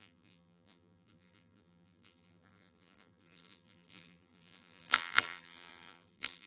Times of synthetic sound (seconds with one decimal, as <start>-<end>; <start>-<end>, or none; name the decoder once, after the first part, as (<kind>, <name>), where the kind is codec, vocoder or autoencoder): 0.0-6.5 (vocoder, BigVGAN v2)